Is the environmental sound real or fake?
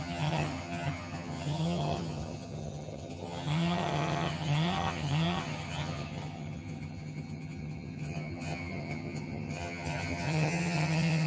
fake